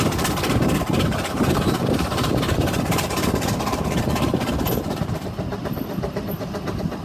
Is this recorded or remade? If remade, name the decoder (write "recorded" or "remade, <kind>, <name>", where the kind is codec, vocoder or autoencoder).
remade, vocoder, BigVGAN v2